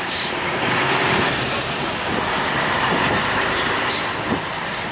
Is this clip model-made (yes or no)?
yes